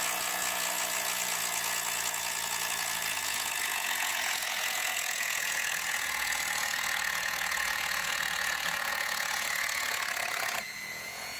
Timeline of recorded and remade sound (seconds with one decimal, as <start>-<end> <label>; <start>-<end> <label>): 0.0-11.4 remade